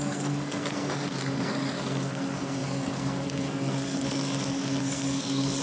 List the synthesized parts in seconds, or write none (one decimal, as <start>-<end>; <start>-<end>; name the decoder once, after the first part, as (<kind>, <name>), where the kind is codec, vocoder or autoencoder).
0.0-5.6 (codec, SNAC)